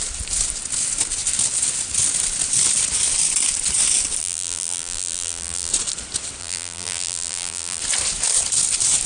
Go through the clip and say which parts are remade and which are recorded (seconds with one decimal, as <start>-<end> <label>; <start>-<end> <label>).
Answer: 0.0-4.2 recorded; 4.2-5.7 remade; 5.7-6.4 recorded; 6.4-7.8 remade; 7.8-9.1 recorded